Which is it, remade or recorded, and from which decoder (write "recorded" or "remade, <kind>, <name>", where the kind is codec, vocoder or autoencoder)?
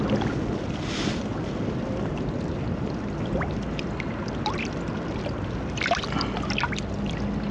recorded